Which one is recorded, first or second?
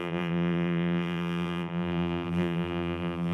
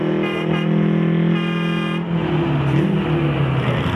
second